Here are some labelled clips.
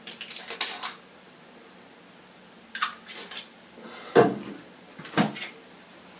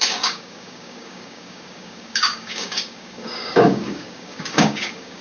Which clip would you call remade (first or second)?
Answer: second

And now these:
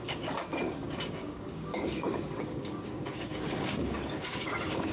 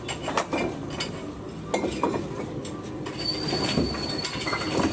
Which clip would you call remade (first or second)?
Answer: first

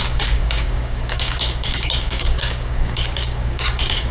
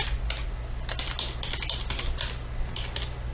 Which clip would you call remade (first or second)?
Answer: first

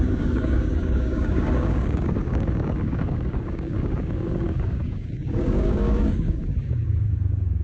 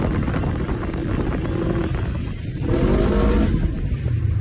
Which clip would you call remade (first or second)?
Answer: first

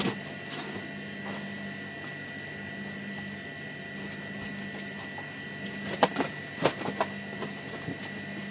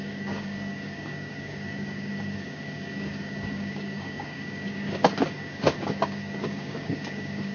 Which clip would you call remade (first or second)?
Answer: second